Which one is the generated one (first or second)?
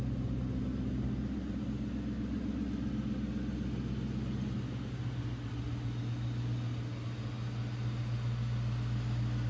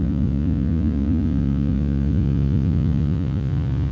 second